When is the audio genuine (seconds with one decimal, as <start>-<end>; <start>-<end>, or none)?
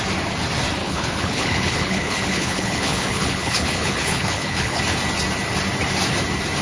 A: 0.0-0.8; 4.8-6.6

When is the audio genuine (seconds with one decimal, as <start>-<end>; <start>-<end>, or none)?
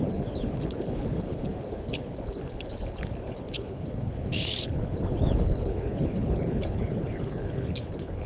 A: none